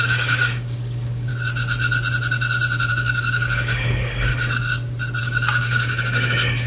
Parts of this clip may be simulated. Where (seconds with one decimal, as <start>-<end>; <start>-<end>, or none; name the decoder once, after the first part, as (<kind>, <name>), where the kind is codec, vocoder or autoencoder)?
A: 0.0-1.3 (codec, DAC); 2.9-4.3; 5.2-6.7